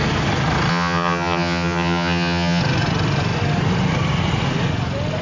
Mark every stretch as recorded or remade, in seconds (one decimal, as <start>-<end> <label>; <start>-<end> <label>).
0.0-0.7 recorded; 0.7-2.6 remade; 2.6-5.2 recorded